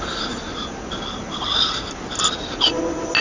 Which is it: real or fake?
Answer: real